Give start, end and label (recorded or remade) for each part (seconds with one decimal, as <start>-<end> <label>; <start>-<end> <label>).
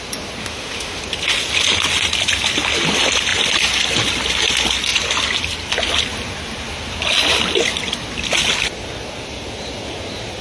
0.0-0.4 recorded; 0.4-1.0 remade; 1.0-10.4 recorded